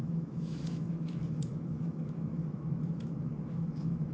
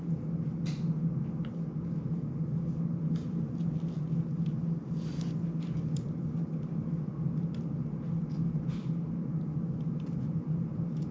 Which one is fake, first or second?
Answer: first